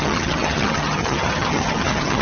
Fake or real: fake